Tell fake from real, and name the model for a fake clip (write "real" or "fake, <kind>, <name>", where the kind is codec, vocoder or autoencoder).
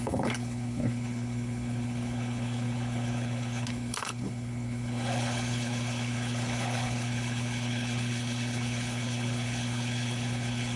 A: fake, codec, HILCodec